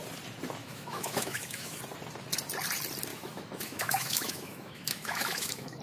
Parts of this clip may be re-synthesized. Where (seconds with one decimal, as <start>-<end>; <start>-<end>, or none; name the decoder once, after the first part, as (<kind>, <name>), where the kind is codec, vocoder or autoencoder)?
0.6-1.8 (autoencoder, DAC-VAE); 3.1-5.8